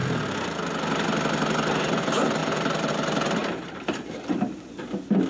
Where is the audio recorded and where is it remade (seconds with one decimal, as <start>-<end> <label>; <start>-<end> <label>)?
0.0-2.4 recorded; 2.4-2.9 remade; 2.9-3.4 recorded; 3.4-4.6 remade; 4.6-5.3 recorded